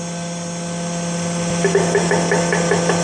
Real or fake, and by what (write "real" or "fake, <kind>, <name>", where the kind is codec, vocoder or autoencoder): real